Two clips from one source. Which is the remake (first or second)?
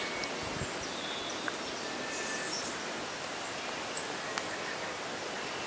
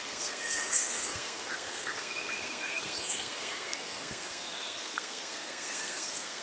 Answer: second